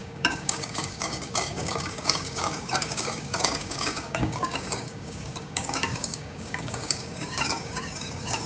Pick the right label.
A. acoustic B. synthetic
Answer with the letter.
B